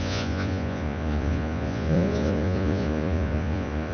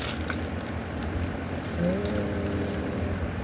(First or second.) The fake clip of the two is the first